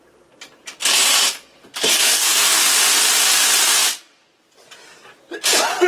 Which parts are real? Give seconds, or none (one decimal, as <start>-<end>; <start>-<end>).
0.0-1.9; 2.6-5.9